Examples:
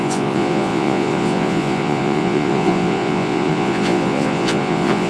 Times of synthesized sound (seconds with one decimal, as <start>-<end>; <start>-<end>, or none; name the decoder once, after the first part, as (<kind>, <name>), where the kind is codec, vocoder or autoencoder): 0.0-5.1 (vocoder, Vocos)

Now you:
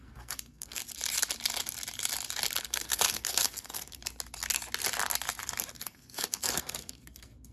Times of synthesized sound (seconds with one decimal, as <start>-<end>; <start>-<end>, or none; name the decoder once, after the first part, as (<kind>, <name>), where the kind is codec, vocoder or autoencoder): 0.0-0.8 (codec, SNAC); 2.6-4.0; 5.7-7.5

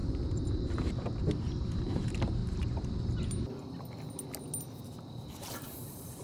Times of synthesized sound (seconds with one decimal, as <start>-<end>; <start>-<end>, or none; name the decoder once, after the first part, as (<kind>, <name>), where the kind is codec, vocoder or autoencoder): 1.0-2.4 (vocoder, BigVGAN v2); 5.1-6.2